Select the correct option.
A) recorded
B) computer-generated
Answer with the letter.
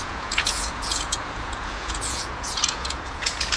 B